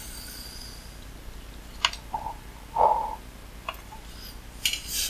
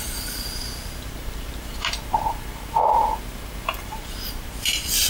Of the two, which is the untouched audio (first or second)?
first